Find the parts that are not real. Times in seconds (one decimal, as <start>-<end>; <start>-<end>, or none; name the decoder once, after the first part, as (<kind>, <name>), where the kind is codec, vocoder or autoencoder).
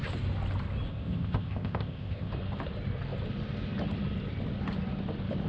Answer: 0.9-2.3 (codec, ZipCodec)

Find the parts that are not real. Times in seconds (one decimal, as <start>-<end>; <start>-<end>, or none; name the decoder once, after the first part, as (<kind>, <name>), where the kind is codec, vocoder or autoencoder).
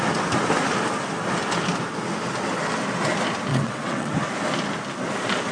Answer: 3.5-4.1 (vocoder, WaveNeXt)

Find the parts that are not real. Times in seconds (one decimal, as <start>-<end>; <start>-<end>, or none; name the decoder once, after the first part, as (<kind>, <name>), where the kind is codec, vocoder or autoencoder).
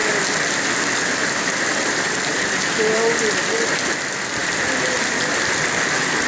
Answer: 0.0-3.4 (vocoder, BigVGAN v2)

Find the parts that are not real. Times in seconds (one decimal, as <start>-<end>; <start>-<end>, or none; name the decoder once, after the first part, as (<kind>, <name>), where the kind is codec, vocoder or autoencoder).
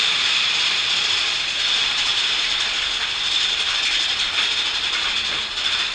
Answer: none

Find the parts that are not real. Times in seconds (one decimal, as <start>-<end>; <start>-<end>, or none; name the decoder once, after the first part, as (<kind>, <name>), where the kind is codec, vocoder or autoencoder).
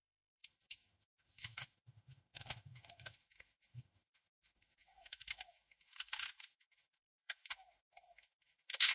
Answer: 0.0-8.9 (autoencoder, DAC-VAE)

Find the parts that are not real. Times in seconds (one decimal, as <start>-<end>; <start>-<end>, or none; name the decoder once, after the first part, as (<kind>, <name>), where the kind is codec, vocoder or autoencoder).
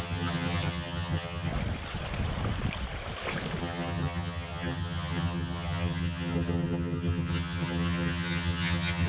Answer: 0.0-1.5 (vocoder, HiFi-GAN); 3.6-9.1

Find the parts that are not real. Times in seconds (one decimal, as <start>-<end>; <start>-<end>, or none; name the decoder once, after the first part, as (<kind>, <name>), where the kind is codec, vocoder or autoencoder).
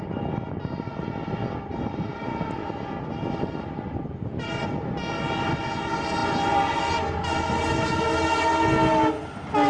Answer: none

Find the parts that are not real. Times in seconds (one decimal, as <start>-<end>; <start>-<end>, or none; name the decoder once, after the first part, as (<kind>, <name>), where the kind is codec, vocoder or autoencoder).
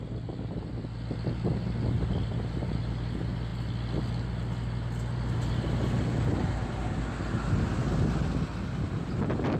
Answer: none